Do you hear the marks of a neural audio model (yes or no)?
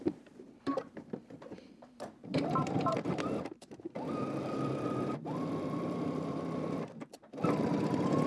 yes